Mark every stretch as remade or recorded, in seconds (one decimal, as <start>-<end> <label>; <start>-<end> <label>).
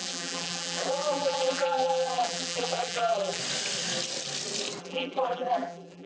0.0-3.4 remade; 3.4-4.8 recorded; 4.8-6.1 remade